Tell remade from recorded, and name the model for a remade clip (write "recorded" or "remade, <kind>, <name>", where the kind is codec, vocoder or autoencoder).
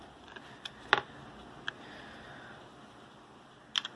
recorded